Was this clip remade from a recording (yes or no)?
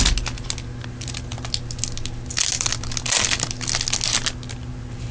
no